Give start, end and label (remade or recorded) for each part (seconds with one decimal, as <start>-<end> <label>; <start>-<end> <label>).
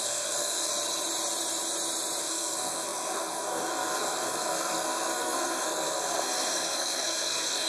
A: 0.0-0.7 remade; 0.7-2.2 recorded; 2.2-7.7 remade